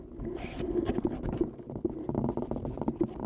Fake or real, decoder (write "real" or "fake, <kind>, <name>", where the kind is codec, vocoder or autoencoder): real